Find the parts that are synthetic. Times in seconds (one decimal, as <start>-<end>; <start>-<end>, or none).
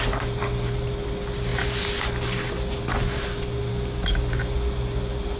3.7-4.4